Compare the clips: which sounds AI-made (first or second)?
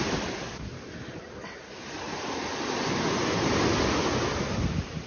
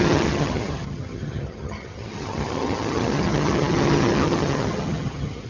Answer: second